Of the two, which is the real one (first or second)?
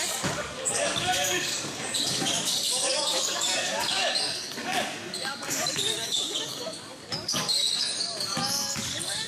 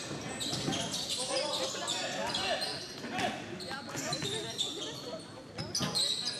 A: second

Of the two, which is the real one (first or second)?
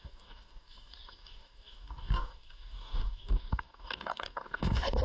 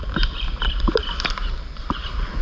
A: second